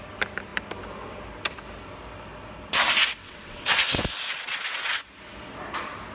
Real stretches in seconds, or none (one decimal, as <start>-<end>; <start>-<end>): 0.0-3.2; 4.8-6.1